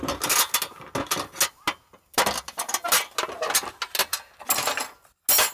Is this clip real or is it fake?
real